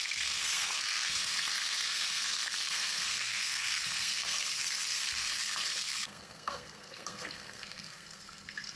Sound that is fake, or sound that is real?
fake